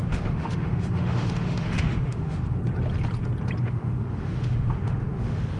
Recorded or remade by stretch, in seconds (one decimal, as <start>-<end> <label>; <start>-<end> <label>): 0.0-2.6 remade; 2.6-3.6 recorded; 3.6-5.6 remade